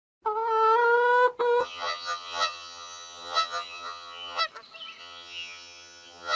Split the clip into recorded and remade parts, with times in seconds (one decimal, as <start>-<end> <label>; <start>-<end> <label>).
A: 0.0-1.6 recorded; 1.6-4.4 remade; 4.4-5.0 recorded; 5.0-6.4 remade

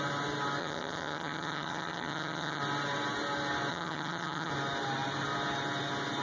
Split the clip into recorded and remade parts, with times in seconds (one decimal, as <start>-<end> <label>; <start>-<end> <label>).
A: 0.0-0.6 recorded; 0.6-2.6 remade; 2.6-3.7 recorded; 3.7-4.5 remade; 4.5-6.2 recorded